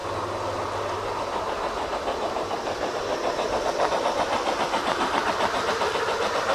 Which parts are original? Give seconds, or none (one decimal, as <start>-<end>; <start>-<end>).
0.0-6.5